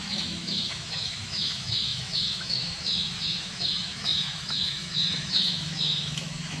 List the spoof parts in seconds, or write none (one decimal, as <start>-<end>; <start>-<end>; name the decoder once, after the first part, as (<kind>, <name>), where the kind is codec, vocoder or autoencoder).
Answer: 0.0-6.6 (autoencoder, DAC-VAE)